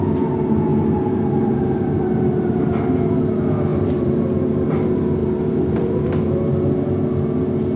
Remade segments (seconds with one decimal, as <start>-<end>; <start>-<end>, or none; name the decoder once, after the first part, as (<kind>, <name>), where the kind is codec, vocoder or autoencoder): 0.7-2.5 (vocoder, BigVGAN v2); 3.7-4.2; 5.2-6.0